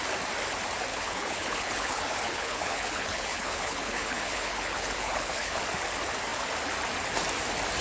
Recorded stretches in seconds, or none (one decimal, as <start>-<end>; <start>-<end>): 0.0-0.9; 5.6-7.8